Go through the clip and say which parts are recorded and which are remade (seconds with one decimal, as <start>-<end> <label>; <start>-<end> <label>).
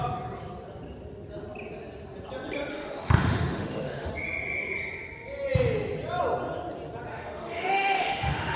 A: 0.0-2.7 recorded; 2.7-4.1 remade; 4.1-7.1 recorded; 7.1-8.6 remade